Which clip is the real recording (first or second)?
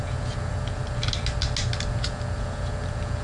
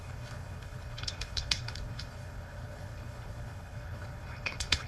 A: first